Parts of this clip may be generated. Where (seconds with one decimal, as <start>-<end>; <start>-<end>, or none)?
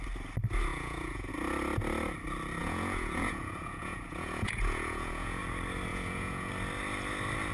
0.7-1.3; 2.6-5.4; 5.9-6.5